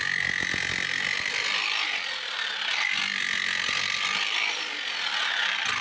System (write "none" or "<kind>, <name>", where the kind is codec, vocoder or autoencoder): none